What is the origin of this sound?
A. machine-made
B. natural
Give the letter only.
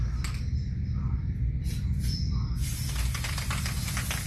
B